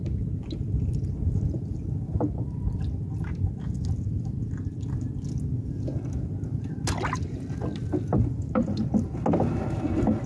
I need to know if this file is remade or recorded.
recorded